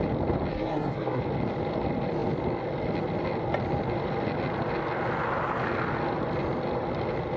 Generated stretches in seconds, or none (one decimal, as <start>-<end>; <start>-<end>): 0.5-1.2